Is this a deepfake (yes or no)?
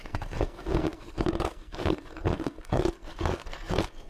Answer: yes